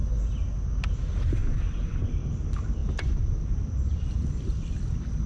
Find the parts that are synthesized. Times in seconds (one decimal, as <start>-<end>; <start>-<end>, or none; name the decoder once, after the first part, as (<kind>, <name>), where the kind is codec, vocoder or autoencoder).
1.0-1.4 (vocoder, BigVGAN v2); 2.1-5.3